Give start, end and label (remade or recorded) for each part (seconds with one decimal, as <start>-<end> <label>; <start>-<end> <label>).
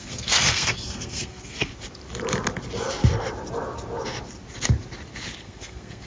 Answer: 0.0-1.7 remade; 1.7-5.4 recorded; 5.4-6.1 remade